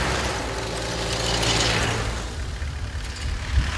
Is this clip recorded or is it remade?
recorded